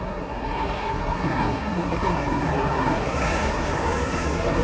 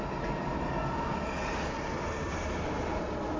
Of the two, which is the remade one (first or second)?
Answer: first